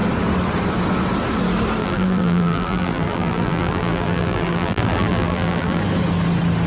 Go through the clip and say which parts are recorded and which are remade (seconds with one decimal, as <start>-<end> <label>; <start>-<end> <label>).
0.0-1.8 recorded; 1.8-5.8 remade; 5.8-6.7 recorded